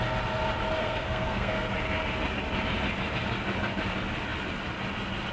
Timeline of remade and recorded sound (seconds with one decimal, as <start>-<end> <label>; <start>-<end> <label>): 0.0-0.8 recorded; 0.8-1.7 remade; 1.7-5.3 recorded